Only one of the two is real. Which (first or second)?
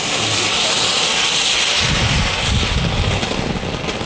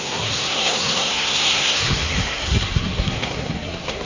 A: first